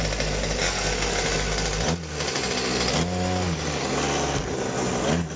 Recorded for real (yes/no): yes